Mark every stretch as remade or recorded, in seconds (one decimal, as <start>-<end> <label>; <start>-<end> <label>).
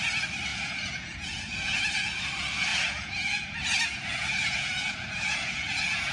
0.0-0.5 recorded; 0.5-2.2 remade; 2.2-2.7 recorded; 2.7-6.1 remade